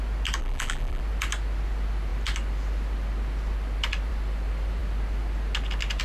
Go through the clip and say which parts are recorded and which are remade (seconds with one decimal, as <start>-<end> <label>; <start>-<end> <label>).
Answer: 0.0-0.4 recorded; 0.4-1.0 remade; 1.0-6.0 recorded